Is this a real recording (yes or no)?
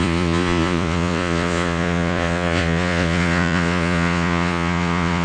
no